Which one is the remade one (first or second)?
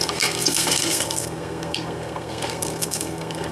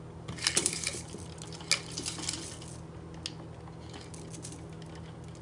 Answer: first